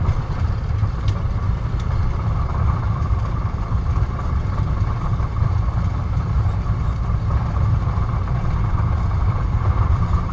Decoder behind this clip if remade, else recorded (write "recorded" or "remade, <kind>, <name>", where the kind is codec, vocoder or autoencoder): remade, vocoder, BigVGAN v2